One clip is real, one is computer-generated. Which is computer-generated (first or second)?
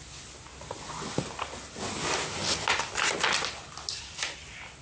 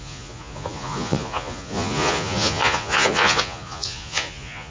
second